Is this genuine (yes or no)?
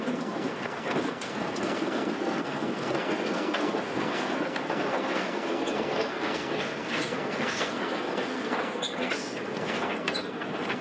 no